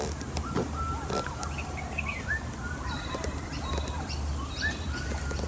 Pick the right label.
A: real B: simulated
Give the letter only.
A